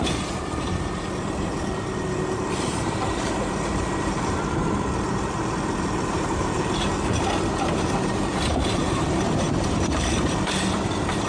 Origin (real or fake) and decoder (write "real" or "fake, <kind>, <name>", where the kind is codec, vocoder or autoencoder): fake, vocoder, BigVGAN v2